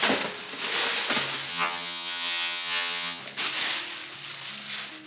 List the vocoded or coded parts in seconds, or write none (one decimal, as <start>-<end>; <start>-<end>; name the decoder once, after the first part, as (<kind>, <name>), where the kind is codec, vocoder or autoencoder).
1.5-3.2 (vocoder, HiFi-GAN)